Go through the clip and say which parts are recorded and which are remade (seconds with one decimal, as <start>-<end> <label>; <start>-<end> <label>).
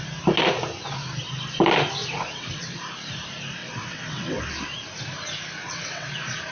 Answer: 0.0-2.0 recorded; 2.0-2.8 remade; 2.8-3.6 recorded; 3.6-4.4 remade; 4.4-5.6 recorded; 5.6-6.1 remade; 6.1-6.5 recorded